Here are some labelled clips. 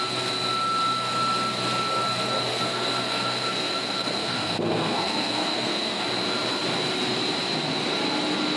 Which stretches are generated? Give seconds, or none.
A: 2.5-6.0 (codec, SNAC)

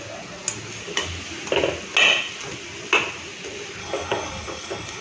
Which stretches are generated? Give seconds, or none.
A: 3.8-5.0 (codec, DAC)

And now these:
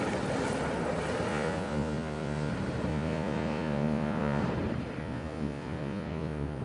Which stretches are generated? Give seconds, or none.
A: 1.3-2.5 (vocoder, Vocos); 2.9-4.4; 5.0-6.6

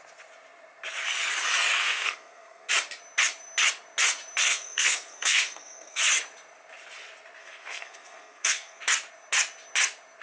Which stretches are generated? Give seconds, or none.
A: 1.8-2.7 (codec, SNAC); 4.4-6.0; 7.4-8.8

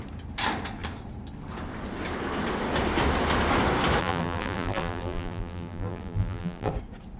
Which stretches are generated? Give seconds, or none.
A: 4.0-6.7 (vocoder, BigVGAN v2)

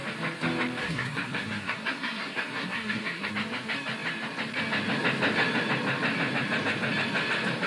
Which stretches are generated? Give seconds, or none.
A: 0.8-3.3 (codec, SNAC)

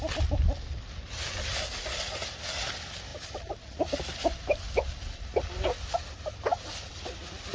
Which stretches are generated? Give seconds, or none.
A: none